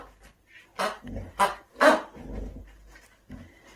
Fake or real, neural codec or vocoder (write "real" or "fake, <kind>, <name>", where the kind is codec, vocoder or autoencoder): real